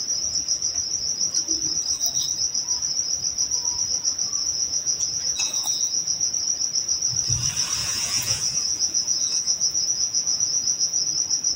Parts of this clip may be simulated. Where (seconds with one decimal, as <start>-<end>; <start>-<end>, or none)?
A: 4.4-6.3; 7.8-11.1